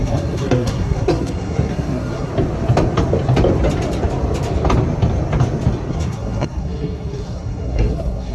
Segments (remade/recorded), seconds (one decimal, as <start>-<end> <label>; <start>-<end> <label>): 0.0-2.3 remade; 2.3-5.9 recorded; 5.9-8.3 remade